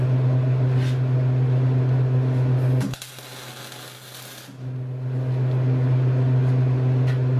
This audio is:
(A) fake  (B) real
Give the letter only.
B